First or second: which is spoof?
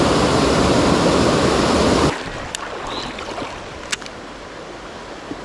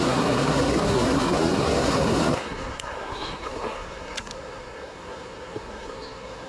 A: second